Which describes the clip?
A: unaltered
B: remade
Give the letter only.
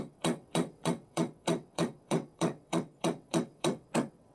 B